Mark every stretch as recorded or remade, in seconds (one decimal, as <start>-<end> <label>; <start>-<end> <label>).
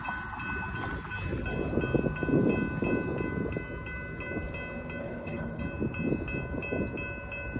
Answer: 0.0-5.0 recorded; 5.0-5.6 remade; 5.6-7.6 recorded